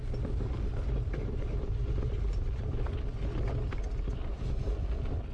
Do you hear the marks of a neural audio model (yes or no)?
no